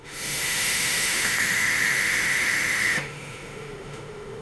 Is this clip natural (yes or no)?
no